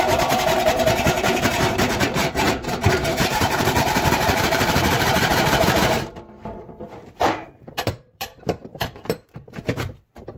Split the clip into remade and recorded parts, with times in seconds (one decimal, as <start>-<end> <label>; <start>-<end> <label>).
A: 0.0-10.4 remade